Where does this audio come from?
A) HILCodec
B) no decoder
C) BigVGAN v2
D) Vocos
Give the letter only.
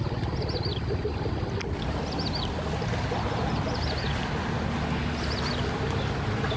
B